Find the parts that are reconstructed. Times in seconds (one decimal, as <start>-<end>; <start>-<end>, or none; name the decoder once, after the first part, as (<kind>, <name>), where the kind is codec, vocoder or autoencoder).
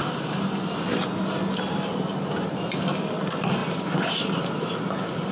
0.0-0.9 (vocoder, BigVGAN v2); 1.6-3.6